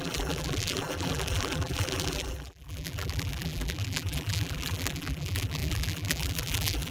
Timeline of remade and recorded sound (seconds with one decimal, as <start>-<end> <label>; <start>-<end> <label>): 0.0-6.9 remade